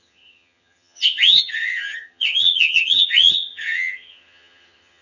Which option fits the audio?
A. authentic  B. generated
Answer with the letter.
B